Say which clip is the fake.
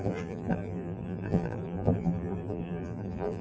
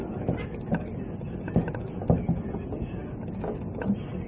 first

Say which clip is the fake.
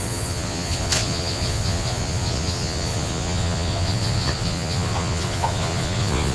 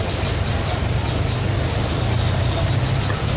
first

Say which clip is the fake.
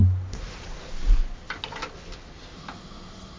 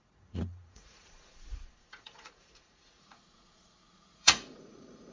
second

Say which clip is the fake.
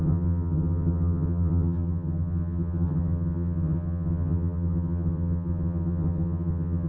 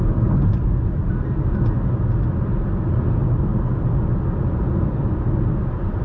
first